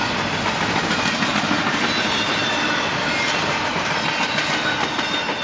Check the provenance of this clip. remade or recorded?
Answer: recorded